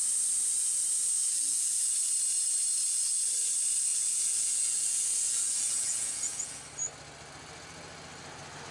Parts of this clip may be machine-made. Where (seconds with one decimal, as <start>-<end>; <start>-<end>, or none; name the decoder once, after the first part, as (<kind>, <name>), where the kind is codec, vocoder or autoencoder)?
1.2-1.9 (vocoder, Vocos); 3.9-6.6